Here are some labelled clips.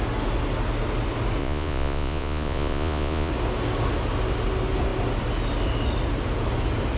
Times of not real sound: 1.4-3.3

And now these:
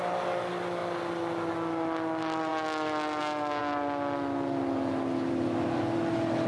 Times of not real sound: none

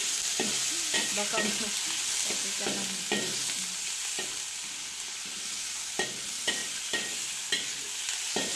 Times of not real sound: none

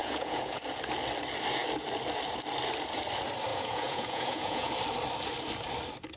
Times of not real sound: 0.0-0.6; 3.5-4.7

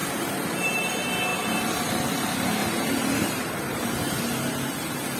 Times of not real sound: 0.0-0.9; 2.6-3.9

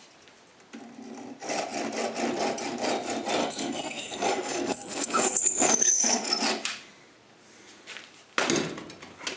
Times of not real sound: 3.4-6.3

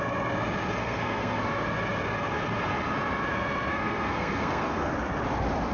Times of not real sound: 0.8-1.4; 3.7-4.9